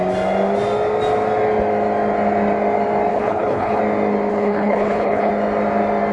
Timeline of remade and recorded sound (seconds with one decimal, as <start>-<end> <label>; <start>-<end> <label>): 0.0-3.1 recorded; 3.1-3.8 remade; 3.8-4.3 recorded; 4.3-5.3 remade; 5.3-6.1 recorded